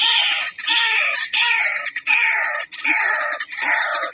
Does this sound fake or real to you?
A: real